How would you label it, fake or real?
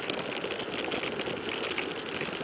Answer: real